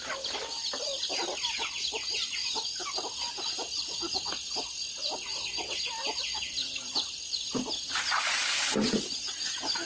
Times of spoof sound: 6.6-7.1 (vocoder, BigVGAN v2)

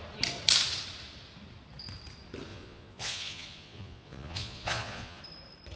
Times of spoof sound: 2.5-5.2 (vocoder, Vocos)